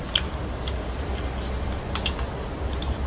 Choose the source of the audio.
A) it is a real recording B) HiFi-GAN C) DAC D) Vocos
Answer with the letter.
A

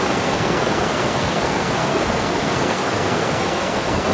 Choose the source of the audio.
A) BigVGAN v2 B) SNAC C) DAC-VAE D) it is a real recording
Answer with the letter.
B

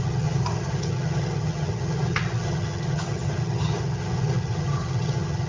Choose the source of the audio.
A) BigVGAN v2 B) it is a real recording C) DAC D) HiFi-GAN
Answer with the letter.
D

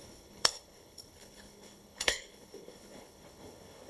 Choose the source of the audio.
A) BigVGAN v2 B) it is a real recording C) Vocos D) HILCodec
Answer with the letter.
D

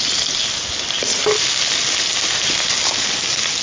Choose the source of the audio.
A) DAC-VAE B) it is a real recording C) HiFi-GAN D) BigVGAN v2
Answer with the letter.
B